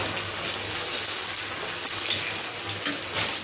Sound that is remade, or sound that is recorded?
recorded